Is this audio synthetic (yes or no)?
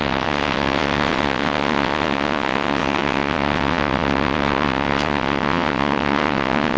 yes